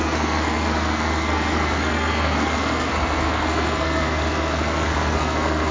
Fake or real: fake